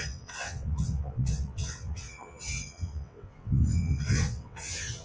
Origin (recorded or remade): remade